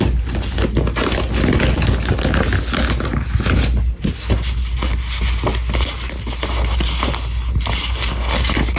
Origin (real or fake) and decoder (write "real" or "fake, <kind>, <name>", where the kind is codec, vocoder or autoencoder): real